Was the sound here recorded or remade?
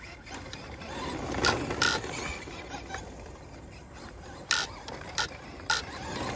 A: recorded